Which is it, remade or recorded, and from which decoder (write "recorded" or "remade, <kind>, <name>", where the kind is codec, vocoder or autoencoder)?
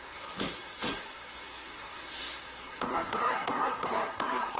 remade, codec, SNAC